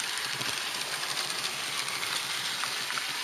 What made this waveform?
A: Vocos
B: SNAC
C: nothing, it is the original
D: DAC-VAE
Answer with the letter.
C